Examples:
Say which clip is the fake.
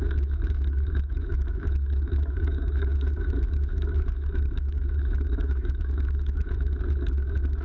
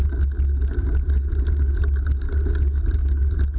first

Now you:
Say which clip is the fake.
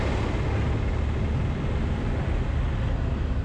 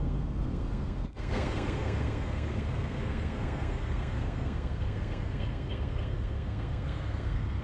second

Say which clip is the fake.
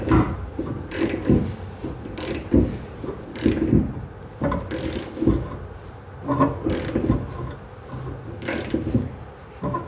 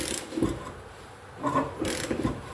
second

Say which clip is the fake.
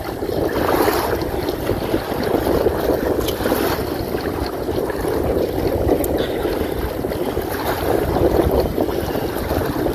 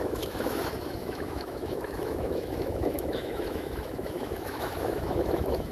second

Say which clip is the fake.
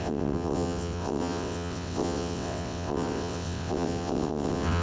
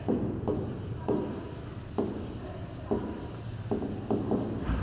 first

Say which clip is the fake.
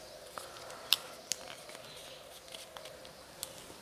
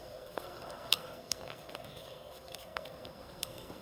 second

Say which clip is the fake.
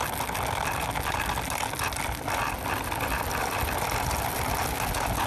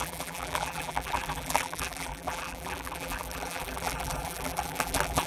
second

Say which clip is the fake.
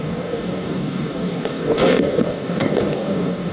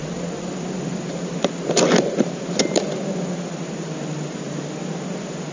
first